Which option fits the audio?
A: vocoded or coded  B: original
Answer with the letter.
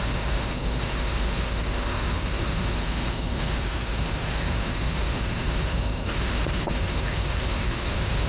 A